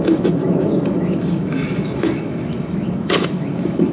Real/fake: fake